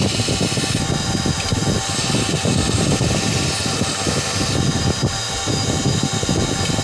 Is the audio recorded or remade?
recorded